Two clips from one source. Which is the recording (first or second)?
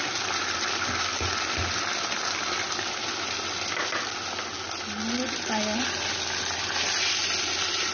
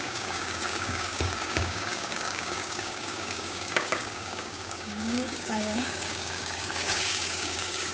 first